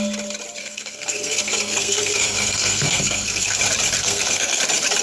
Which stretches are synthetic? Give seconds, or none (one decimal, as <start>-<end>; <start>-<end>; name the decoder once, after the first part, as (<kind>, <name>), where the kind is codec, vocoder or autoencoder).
0.6-3.6 (codec, SNAC); 4.0-4.6